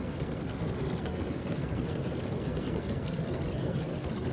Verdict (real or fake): fake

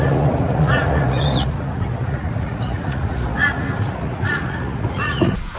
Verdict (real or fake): fake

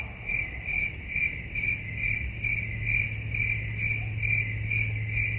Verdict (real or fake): real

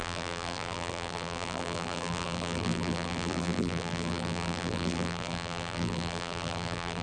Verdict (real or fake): fake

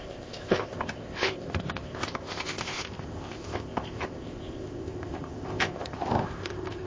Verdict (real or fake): fake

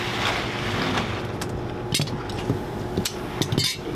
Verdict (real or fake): real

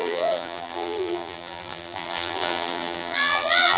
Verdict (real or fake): fake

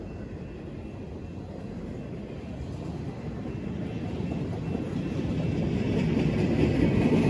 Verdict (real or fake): real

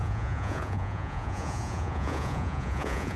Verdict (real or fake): fake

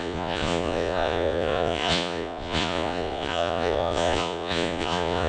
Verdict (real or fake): fake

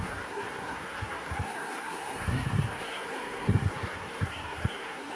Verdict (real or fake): fake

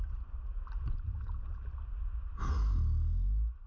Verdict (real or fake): real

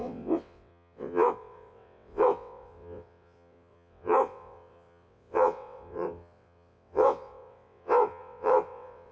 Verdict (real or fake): fake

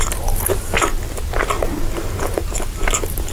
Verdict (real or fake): real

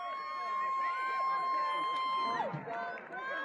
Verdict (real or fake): real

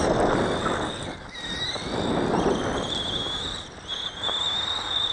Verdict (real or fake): real